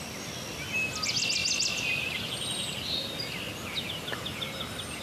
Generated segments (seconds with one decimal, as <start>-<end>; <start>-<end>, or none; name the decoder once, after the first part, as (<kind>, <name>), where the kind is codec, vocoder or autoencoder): none